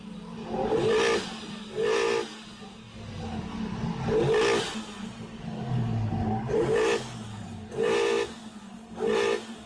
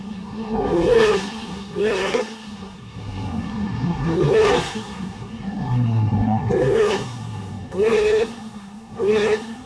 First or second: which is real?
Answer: first